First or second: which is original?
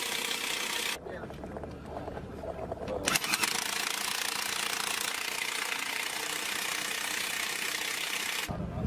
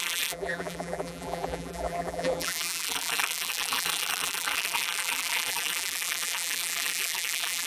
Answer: first